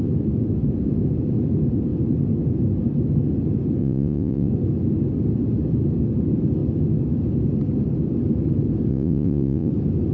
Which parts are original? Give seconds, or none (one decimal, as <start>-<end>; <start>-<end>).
0.0-3.8; 4.5-8.9; 9.7-10.1